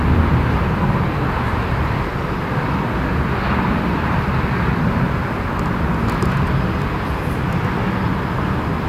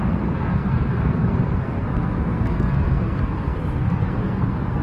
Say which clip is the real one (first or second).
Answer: first